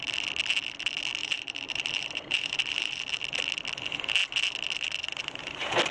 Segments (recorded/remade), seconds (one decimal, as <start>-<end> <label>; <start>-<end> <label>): 0.0-1.2 recorded; 1.2-3.0 remade; 3.0-5.9 recorded